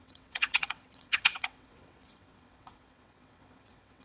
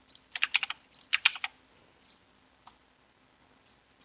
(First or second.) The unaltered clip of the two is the second